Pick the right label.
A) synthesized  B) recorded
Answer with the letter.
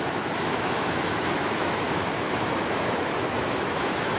A